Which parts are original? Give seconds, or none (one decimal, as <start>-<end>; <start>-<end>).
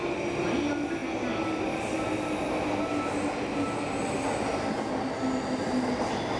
0.0-6.4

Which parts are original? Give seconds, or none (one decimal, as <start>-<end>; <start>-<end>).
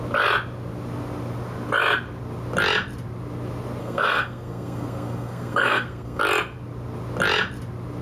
0.0-3.8; 6.2-8.0